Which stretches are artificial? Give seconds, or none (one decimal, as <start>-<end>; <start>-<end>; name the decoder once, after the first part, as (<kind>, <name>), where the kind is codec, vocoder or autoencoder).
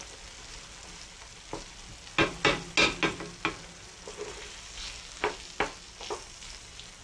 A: none